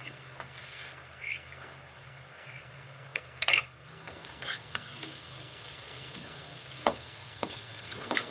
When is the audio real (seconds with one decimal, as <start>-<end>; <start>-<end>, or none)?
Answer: none